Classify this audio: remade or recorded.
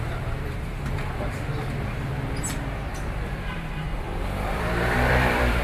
remade